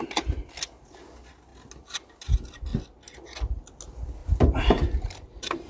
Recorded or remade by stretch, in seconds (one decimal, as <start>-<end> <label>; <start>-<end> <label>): 0.0-4.2 recorded; 4.2-5.7 remade